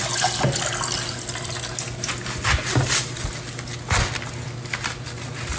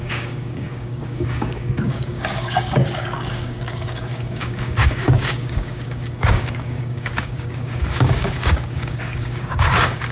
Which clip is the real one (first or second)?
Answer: first